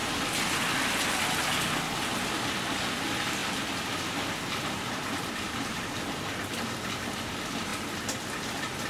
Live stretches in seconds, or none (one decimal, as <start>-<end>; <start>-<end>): 0.0-8.9